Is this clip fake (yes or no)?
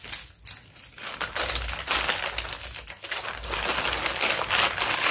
no